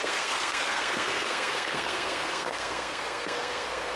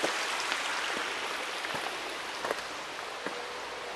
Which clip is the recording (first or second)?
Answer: second